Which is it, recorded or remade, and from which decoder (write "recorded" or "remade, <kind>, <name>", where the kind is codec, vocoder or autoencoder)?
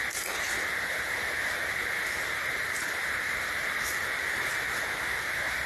recorded